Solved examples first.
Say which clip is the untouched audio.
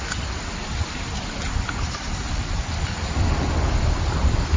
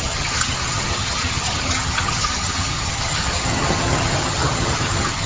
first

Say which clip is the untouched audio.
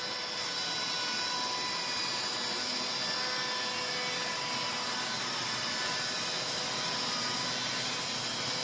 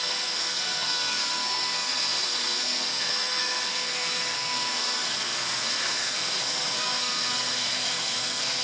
first